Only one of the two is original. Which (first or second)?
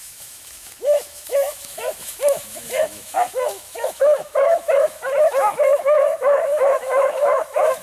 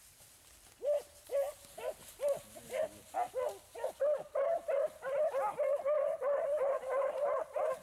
second